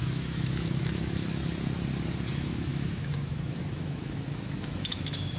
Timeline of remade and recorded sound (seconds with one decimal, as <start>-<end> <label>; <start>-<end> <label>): 0.0-1.4 remade; 1.4-2.3 recorded; 2.3-5.4 remade